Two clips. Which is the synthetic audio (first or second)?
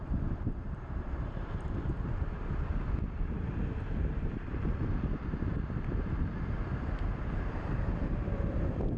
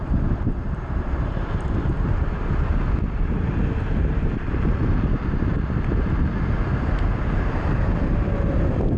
first